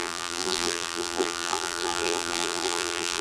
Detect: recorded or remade remade